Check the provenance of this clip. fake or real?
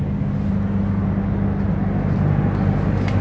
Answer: real